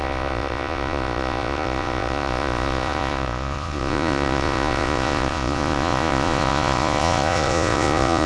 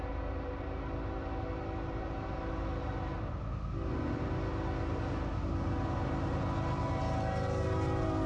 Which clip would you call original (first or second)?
second